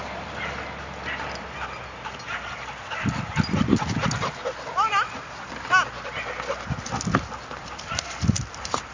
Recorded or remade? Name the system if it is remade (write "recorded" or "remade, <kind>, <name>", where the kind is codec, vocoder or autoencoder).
recorded